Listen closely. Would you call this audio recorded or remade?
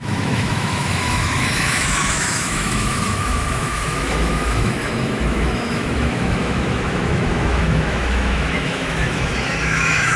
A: remade